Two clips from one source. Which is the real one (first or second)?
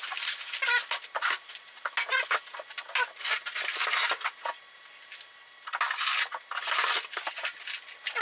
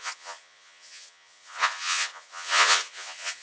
first